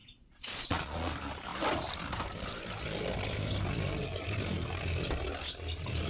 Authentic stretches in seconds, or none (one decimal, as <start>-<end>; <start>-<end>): 1.1-6.1